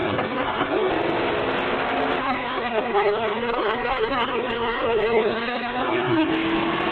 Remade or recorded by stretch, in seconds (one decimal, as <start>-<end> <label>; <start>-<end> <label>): 0.0-0.9 remade; 0.9-2.2 recorded; 2.2-6.3 remade; 6.3-6.9 recorded